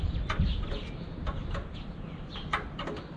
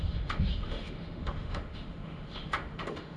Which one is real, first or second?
first